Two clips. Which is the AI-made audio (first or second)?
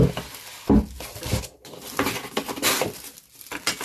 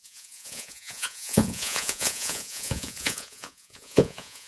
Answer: second